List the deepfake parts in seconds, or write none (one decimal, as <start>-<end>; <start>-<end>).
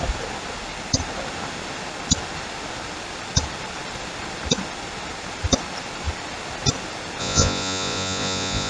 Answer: 7.2-8.7